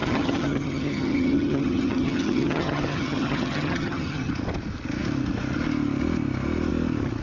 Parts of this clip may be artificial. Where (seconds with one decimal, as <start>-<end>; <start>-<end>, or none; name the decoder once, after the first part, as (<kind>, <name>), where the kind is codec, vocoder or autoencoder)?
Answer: 0.0-4.3 (vocoder, HiFi-GAN)

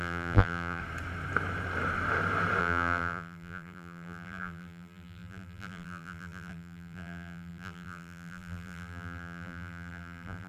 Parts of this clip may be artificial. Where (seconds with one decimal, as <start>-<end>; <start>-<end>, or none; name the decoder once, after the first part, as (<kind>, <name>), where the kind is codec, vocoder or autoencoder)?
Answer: 0.0-0.8 (vocoder, BigVGAN v2); 2.6-10.5

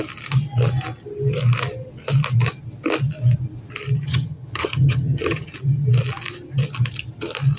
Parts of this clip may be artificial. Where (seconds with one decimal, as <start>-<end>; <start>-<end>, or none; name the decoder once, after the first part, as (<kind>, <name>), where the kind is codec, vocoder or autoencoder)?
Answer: 4.1-5.5 (vocoder, HiFi-GAN)